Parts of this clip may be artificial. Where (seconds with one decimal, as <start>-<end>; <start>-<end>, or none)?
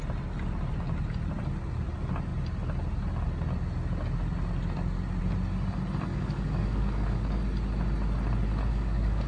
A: 6.1-7.4; 8.7-9.3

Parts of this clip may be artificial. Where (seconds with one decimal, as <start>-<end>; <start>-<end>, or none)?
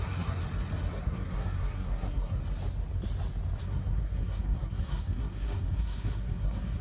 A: 0.0-0.4; 1.0-2.4; 3.6-6.8